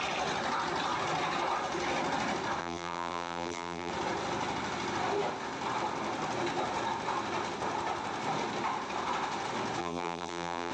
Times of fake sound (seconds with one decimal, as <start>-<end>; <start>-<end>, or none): 2.6-3.9; 9.8-10.7